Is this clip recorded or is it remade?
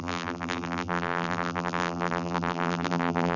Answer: remade